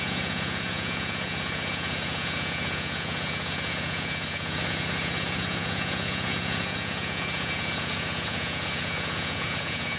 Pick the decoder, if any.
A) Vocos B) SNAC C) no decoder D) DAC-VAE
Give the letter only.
A